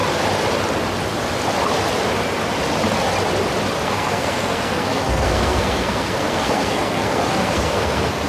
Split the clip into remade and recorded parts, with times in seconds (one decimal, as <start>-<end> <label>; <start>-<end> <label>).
0.0-3.8 recorded; 3.8-8.3 remade